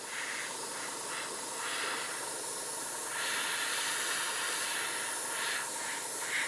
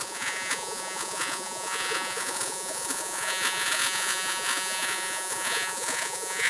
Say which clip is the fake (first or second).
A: second